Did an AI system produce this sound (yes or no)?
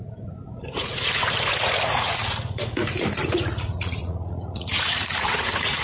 yes